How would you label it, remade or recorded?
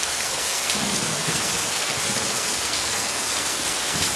remade